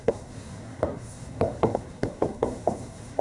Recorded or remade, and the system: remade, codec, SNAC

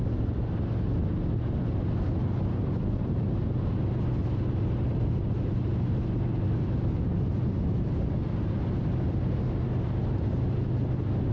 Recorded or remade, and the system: recorded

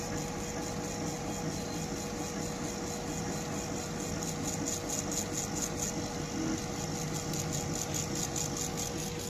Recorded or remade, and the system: recorded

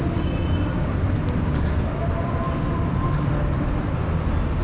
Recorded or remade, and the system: recorded